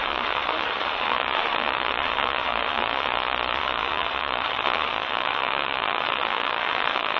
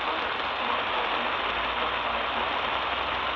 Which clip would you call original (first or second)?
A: second